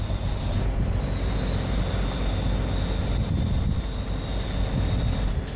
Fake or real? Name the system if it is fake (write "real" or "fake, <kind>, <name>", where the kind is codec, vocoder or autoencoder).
real